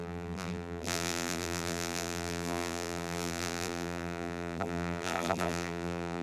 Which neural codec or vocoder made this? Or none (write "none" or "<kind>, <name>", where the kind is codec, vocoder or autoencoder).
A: vocoder, BigVGAN v2